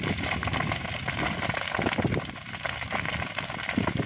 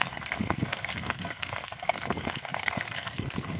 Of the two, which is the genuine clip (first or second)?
first